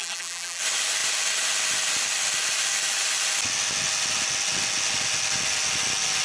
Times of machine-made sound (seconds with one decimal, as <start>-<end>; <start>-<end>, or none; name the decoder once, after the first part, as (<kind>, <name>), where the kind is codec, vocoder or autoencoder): 0.0-0.6 (vocoder, BigVGAN v2)